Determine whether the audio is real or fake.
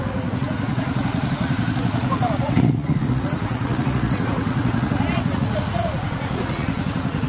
fake